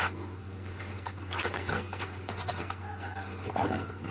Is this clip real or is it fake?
fake